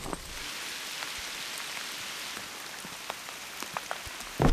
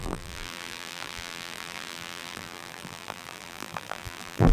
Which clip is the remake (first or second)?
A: second